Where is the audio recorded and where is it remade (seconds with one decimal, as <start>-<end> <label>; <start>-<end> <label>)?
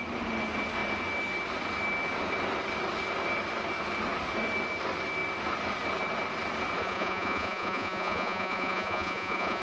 0.0-6.8 recorded; 6.8-9.6 remade